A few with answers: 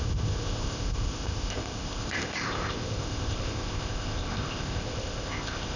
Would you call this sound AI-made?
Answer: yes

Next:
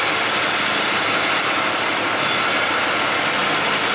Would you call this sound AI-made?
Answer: no